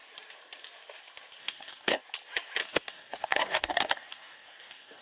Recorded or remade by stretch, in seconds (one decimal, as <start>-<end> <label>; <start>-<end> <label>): 0.0-1.4 recorded; 1.4-2.0 remade; 2.0-2.6 recorded; 2.6-5.0 remade